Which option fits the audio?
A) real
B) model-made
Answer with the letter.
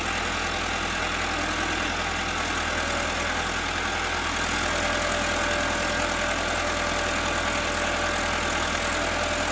A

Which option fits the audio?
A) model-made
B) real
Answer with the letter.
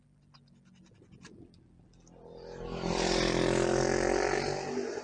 B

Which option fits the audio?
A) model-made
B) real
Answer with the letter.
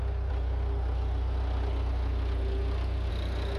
B